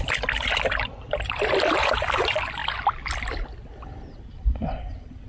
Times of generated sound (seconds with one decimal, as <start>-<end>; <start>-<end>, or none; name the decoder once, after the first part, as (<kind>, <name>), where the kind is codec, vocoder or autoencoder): 0.0-2.6 (vocoder, BigVGAN v2); 4.8-5.3